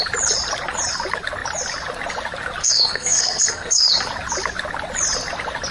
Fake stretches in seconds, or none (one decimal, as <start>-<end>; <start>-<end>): 2.6-3.9